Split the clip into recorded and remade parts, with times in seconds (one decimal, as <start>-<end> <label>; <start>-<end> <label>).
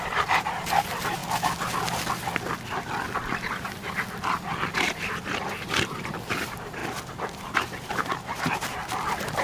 0.0-1.2 remade; 1.2-4.7 recorded; 4.7-6.8 remade; 6.8-7.9 recorded; 7.9-8.8 remade; 8.8-9.4 recorded